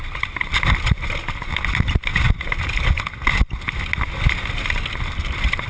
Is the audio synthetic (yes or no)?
no